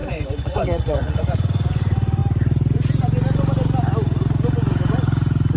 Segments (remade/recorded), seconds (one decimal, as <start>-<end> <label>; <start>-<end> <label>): 0.0-2.2 remade; 2.2-5.6 recorded